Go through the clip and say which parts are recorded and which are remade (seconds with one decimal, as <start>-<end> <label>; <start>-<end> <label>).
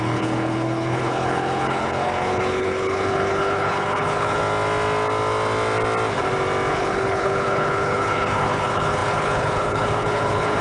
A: 0.0-4.4 remade; 4.4-6.7 recorded; 6.7-10.6 remade